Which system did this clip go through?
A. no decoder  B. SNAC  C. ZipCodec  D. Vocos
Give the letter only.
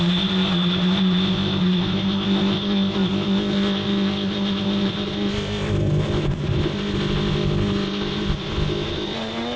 C